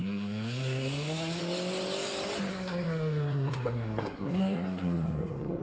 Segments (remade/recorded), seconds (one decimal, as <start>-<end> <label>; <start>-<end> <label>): 0.0-1.4 remade; 1.4-2.5 recorded; 2.5-5.6 remade